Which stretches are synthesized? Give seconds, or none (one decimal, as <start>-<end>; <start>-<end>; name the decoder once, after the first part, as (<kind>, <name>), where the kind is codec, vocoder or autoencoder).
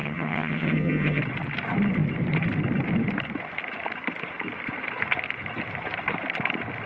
0.0-1.2 (vocoder, HiFi-GAN)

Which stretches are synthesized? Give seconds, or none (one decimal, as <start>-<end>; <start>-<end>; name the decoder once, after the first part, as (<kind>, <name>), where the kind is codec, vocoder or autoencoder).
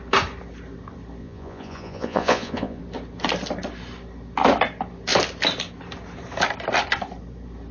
1.2-2.8 (vocoder, Vocos)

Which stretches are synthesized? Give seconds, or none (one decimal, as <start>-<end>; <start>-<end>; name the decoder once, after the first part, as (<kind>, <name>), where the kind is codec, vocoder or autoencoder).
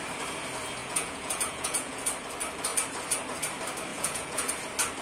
0.8-2.0 (vocoder, Vocos); 3.9-4.5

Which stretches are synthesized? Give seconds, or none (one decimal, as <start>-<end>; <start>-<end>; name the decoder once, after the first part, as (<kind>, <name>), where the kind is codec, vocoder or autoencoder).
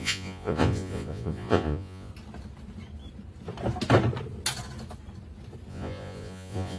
0.0-2.1 (vocoder, Vocos); 5.7-6.8